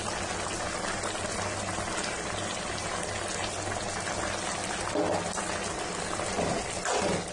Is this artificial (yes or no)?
no